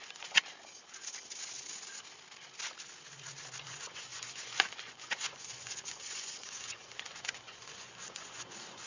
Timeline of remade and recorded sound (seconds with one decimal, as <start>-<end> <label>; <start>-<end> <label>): 0.0-0.4 remade; 0.4-3.6 recorded; 3.6-8.9 remade